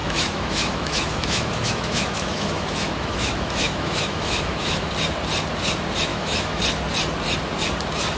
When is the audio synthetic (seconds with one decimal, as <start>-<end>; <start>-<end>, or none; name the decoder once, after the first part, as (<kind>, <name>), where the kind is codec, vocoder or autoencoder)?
0.0-4.9 (autoencoder, DAC-VAE); 6.1-6.6